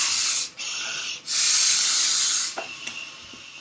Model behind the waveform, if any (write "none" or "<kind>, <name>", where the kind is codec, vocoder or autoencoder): none